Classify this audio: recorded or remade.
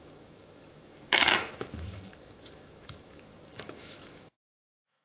remade